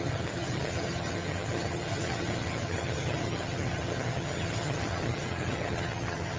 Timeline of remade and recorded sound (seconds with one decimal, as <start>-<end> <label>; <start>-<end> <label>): 0.0-6.4 remade